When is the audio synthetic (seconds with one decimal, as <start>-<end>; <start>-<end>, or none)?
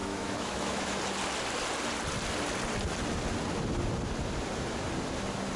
0.0-1.0